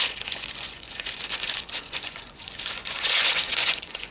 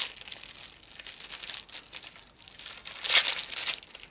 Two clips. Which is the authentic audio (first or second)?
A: second